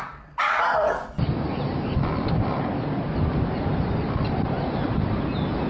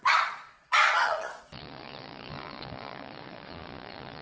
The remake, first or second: second